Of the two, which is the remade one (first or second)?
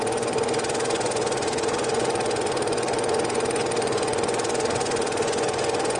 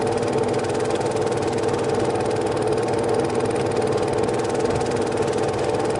first